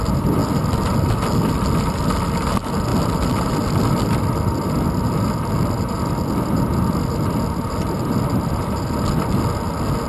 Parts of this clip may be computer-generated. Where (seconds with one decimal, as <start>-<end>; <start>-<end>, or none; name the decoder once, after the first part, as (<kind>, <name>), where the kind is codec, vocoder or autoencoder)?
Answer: none